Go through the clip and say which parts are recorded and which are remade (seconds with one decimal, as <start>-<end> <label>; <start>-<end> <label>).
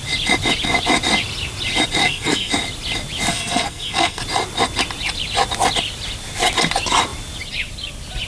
0.0-2.0 recorded; 2.0-2.5 remade; 2.5-3.3 recorded; 3.3-4.2 remade; 4.2-8.3 recorded